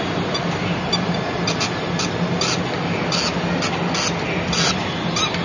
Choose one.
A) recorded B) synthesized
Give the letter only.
A